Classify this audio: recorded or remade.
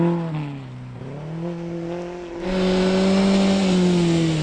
recorded